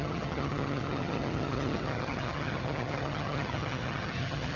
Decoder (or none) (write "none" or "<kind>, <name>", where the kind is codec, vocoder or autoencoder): vocoder, HiFi-GAN